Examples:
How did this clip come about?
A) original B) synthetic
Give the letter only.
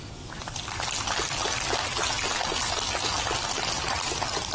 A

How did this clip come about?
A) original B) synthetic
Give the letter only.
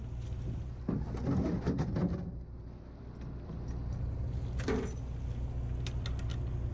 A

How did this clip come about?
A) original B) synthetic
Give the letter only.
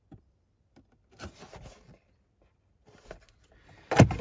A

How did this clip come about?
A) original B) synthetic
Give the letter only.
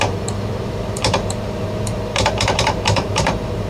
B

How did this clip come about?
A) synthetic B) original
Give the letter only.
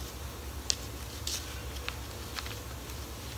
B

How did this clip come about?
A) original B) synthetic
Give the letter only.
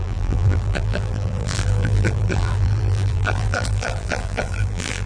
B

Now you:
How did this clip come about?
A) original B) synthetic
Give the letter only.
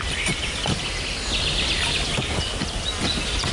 A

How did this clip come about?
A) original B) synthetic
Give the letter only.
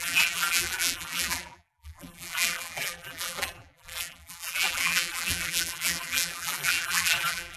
B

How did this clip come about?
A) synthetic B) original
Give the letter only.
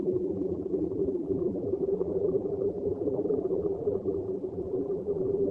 A